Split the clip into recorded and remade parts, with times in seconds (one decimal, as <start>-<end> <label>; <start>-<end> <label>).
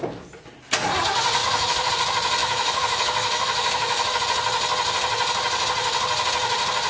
0.0-1.4 recorded; 1.4-1.9 remade; 1.9-2.4 recorded; 2.4-4.2 remade; 4.2-6.9 recorded